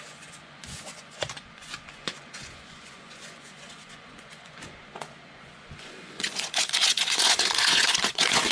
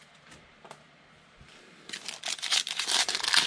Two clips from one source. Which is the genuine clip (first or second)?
second